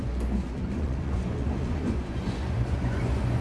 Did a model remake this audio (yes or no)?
yes